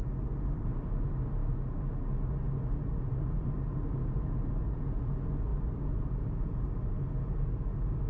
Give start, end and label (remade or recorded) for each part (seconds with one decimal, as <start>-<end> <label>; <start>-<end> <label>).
0.0-8.1 recorded